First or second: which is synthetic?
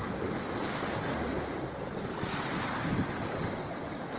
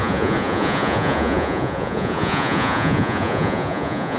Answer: second